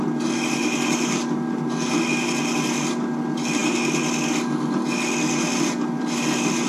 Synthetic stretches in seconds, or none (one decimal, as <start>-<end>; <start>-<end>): none